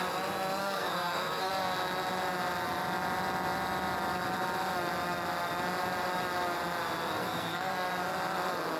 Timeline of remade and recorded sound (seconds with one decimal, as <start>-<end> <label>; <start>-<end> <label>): 0.0-0.6 recorded; 0.6-1.5 remade; 1.5-7.2 recorded; 7.2-7.7 remade; 7.7-8.8 recorded